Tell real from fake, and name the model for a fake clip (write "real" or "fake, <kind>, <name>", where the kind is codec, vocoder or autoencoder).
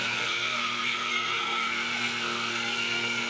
fake, codec, SNAC